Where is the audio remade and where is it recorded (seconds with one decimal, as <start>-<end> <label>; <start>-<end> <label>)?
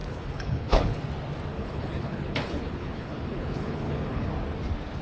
0.0-1.0 remade; 1.0-1.5 recorded; 1.5-4.3 remade; 4.3-5.0 recorded